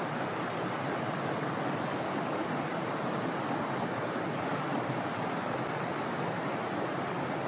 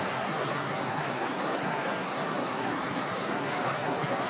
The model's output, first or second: second